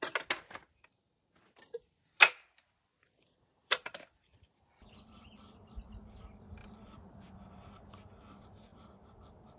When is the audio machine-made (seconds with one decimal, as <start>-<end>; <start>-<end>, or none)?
3.6-5.4; 6.6-7.9

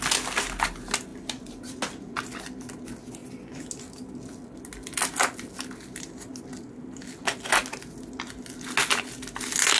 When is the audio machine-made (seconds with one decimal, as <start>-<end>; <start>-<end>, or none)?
none